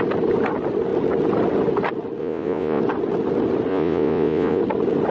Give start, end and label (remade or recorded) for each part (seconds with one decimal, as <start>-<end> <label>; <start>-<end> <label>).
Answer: 0.0-2.2 recorded; 2.2-2.8 remade; 2.8-3.7 recorded; 3.7-4.6 remade; 4.6-5.1 recorded